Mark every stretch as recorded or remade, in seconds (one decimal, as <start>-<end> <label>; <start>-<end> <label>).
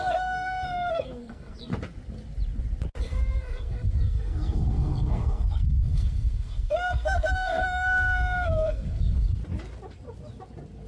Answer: 0.0-1.7 remade; 1.7-3.0 recorded; 3.0-9.4 remade; 9.4-10.9 recorded